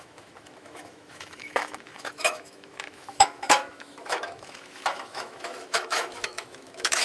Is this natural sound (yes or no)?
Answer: no